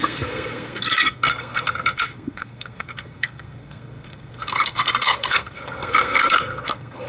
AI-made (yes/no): yes